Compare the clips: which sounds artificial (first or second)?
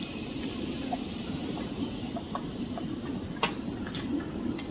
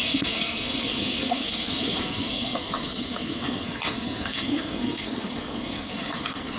second